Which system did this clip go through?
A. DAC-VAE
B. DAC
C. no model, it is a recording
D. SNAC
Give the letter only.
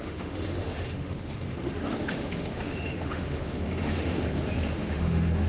A